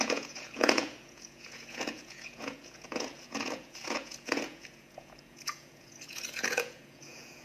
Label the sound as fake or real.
fake